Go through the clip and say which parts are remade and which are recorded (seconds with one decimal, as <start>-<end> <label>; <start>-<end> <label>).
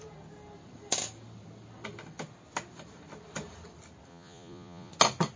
0.0-4.1 recorded; 4.1-4.9 remade; 4.9-5.4 recorded